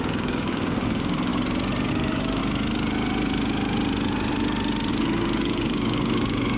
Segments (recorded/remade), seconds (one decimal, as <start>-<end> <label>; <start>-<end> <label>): 0.0-1.3 remade; 1.3-1.9 recorded; 1.9-2.4 remade; 2.4-4.9 recorded; 4.9-6.6 remade